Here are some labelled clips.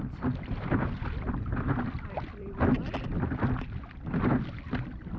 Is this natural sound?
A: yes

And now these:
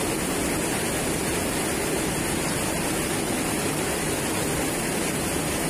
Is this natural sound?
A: yes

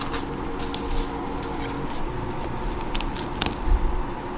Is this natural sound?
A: yes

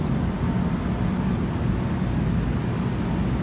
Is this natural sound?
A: yes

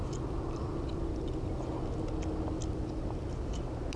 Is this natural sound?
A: yes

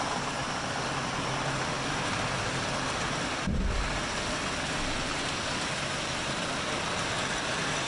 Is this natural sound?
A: yes